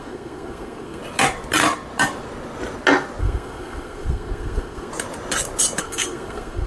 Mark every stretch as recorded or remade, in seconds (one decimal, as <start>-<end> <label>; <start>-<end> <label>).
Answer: 0.0-1.0 remade; 1.0-3.2 recorded; 3.2-4.9 remade; 4.9-5.8 recorded; 5.8-6.7 remade